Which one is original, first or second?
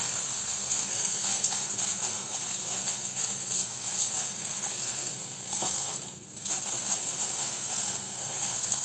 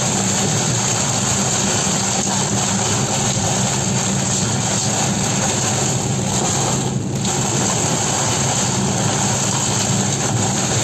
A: second